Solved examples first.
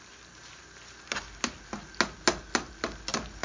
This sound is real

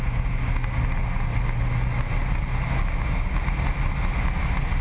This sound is real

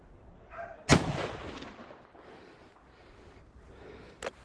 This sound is real